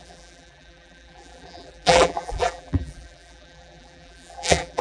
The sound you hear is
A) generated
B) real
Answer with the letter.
A